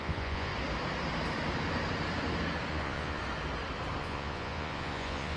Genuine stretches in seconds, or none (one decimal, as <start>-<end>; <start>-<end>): 0.5-2.7; 3.2-4.0